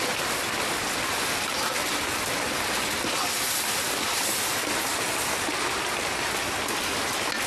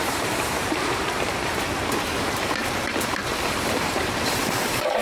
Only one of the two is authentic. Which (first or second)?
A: first